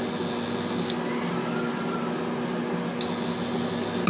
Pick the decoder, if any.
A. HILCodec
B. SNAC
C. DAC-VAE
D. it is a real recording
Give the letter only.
D